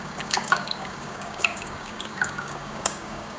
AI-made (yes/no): yes